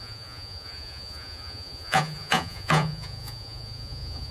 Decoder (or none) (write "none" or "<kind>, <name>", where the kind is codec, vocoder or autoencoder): vocoder, Vocos